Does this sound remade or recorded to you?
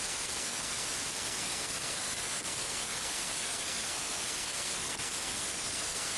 remade